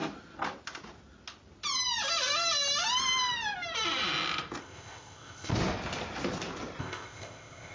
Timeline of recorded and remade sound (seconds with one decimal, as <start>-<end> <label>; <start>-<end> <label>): 0.0-4.6 recorded; 4.6-5.5 remade; 5.5-6.8 recorded; 6.8-7.7 remade